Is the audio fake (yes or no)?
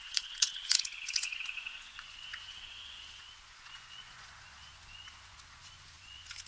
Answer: yes